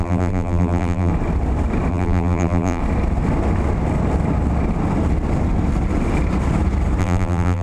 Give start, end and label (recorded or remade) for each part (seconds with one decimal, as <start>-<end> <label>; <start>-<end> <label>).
0.0-1.1 remade; 1.1-1.9 recorded; 1.9-2.8 remade; 2.8-7.0 recorded; 7.0-7.6 remade